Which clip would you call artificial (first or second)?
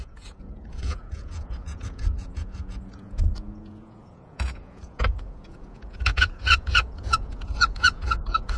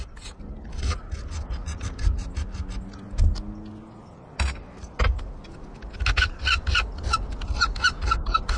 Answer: first